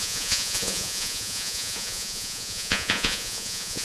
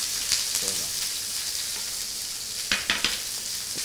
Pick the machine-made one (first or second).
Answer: first